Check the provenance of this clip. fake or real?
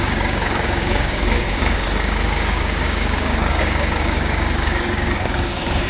fake